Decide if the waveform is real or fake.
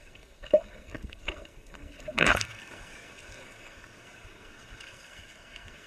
fake